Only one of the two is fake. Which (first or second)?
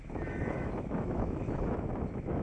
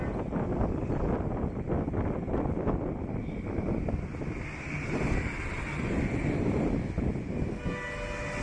first